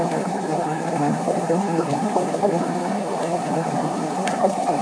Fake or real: fake